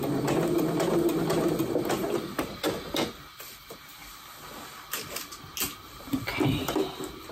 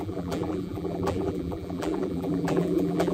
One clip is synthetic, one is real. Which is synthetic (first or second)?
second